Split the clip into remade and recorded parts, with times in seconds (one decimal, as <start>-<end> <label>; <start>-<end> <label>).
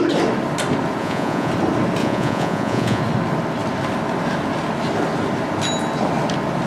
0.0-1.0 recorded; 1.0-1.5 remade; 1.5-2.0 recorded; 2.0-3.0 remade; 3.0-6.7 recorded